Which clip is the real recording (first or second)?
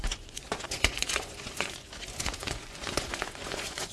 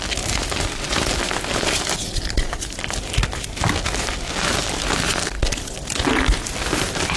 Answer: second